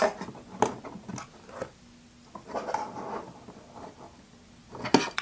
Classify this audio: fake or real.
real